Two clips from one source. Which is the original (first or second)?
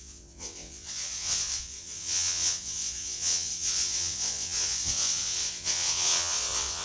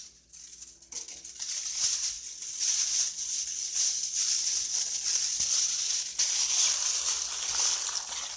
second